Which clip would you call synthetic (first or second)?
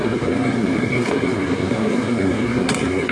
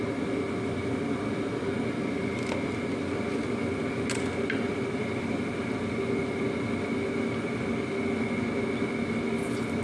first